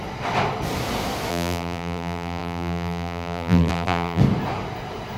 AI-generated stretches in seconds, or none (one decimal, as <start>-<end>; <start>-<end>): 1.3-4.2